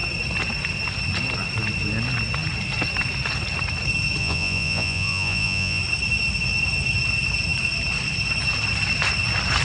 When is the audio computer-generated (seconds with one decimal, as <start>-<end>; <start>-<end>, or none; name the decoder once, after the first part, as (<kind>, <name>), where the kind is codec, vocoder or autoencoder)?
4.2-5.8 (vocoder, Vocos)